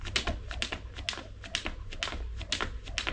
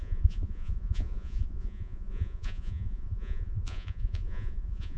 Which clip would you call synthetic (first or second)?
second